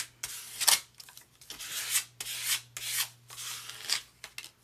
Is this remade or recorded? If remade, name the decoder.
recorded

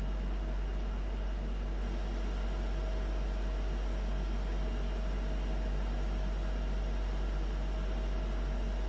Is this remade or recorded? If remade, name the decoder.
recorded